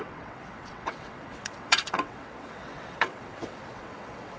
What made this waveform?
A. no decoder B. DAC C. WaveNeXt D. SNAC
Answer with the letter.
C